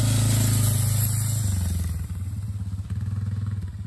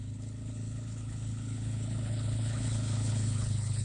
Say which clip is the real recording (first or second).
first